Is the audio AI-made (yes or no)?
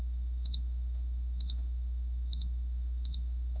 yes